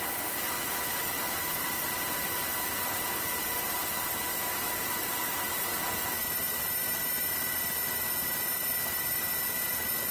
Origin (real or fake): real